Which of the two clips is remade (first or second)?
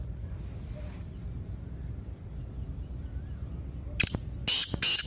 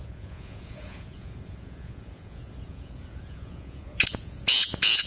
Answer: second